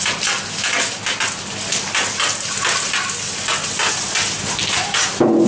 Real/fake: real